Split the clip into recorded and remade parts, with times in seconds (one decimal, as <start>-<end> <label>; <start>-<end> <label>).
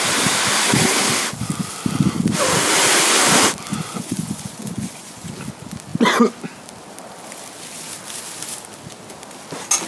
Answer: 0.0-3.7 recorded; 3.7-5.3 remade; 5.3-9.9 recorded